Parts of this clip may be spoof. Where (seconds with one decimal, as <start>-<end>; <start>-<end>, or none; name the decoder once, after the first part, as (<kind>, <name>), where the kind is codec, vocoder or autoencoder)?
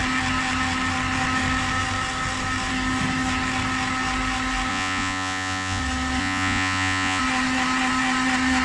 4.7-5.8 (vocoder, Vocos); 6.2-7.2